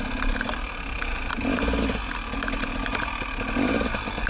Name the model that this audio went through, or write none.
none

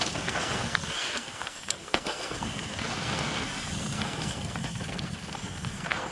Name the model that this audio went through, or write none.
codec, SNAC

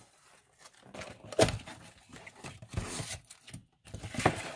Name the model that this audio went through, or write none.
none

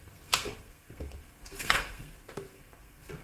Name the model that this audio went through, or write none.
codec, SNAC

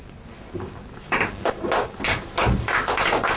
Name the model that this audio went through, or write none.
none